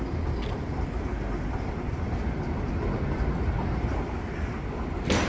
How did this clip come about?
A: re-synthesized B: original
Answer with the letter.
B